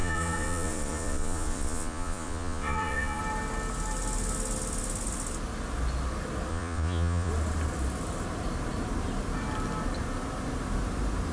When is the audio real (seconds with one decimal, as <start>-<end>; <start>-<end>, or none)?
3.2-6.5; 7.3-11.3